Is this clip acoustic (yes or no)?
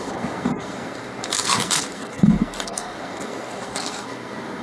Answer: no